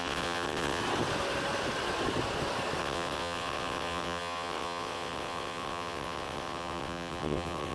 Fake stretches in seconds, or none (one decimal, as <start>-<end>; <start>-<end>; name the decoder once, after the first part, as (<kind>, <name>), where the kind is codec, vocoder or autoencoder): 0.0-0.8 (vocoder, WaveNeXt); 2.8-7.7